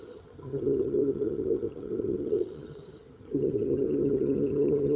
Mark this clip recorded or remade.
remade